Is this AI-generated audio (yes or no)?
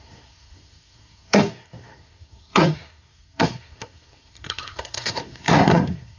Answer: yes